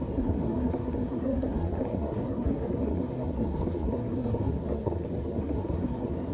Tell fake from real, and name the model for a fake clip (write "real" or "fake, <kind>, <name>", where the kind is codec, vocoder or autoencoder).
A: fake, codec, SNAC